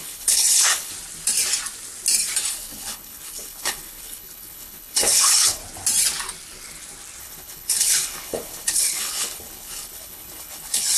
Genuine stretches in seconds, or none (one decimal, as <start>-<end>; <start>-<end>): 0.9-2.5; 5.6-7.2